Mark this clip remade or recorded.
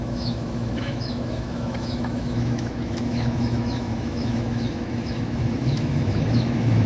remade